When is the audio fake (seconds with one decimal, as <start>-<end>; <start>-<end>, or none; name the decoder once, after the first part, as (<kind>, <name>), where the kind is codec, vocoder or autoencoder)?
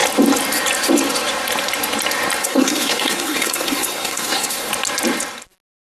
2.4-4.7 (codec, SNAC)